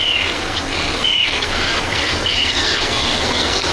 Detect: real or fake fake